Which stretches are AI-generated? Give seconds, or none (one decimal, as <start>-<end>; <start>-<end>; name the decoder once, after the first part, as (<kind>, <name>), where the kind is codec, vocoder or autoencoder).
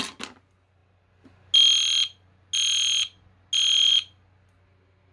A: none